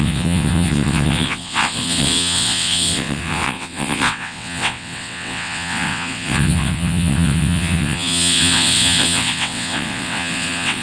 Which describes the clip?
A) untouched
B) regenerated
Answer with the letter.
B